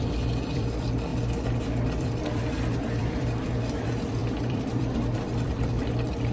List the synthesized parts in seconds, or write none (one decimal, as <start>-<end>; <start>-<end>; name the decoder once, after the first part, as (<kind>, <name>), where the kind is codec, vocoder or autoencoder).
0.0-1.1 (vocoder, BigVGAN v2); 1.6-6.3